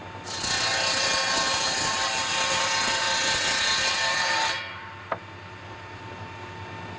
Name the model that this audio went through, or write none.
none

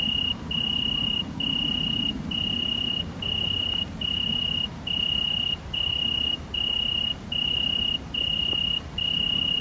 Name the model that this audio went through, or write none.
vocoder, BigVGAN v2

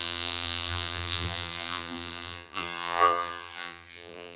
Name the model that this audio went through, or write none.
vocoder, BigVGAN v2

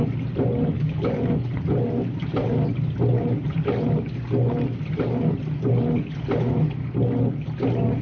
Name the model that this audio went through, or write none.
none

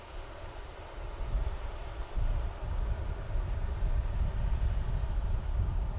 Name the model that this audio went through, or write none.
none